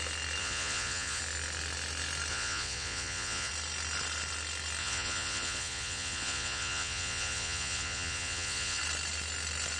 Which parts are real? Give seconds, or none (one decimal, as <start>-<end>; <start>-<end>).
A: 0.0-0.4; 1.2-2.3; 3.5-4.8; 8.8-9.8

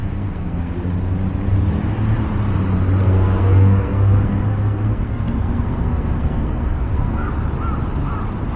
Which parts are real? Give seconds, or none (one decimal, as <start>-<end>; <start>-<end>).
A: 0.7-3.0; 7.3-8.6

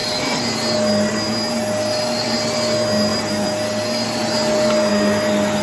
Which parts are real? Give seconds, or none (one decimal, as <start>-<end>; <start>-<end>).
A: 0.0-5.6